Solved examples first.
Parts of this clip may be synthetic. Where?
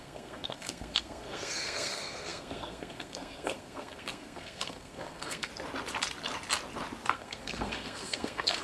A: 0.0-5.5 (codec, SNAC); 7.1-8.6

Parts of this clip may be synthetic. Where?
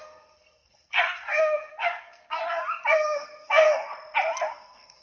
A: 0.0-2.4 (codec, SNAC); 2.9-3.9; 4.5-5.0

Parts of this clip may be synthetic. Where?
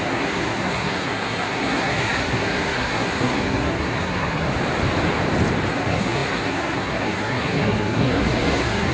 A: 0.0-4.5 (codec, SNAC); 5.7-8.9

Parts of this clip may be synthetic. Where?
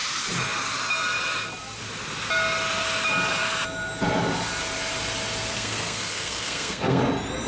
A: 5.5-7.0 (codec, SNAC)